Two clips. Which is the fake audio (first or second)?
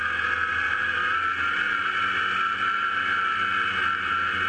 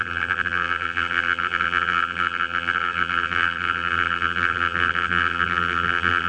second